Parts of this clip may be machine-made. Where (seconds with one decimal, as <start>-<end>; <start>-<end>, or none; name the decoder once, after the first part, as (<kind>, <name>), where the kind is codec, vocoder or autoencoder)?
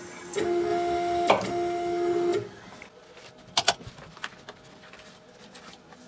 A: none